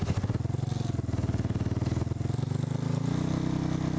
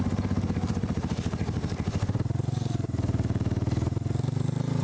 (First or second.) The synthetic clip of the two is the second